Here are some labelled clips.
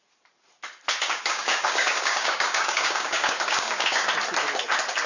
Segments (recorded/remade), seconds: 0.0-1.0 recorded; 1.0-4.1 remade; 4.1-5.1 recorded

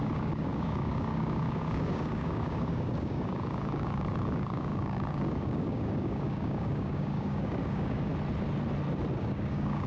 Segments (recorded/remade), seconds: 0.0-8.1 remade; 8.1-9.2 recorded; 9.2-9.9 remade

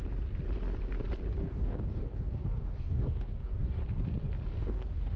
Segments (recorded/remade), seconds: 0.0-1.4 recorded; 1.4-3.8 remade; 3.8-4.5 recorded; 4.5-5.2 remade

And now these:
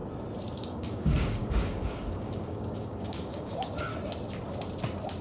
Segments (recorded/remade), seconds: 0.0-0.6 recorded; 0.6-3.9 remade; 3.9-5.2 recorded

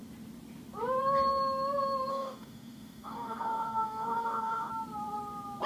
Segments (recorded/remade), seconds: 0.0-2.1 recorded; 2.1-4.7 remade; 4.7-5.7 recorded

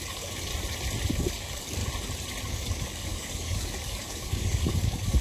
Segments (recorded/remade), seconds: 0.0-0.5 remade; 0.5-1.1 recorded; 1.1-1.8 remade; 1.8-2.5 recorded; 2.5-5.2 remade